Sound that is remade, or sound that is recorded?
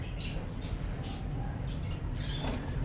recorded